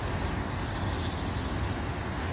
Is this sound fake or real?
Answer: real